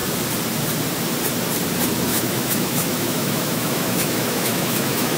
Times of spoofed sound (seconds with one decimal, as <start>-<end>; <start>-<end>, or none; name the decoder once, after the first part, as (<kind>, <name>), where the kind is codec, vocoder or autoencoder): 2.1-5.2 (autoencoder, DAC-VAE)